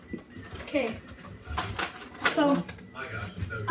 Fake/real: fake